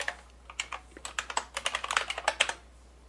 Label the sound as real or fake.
real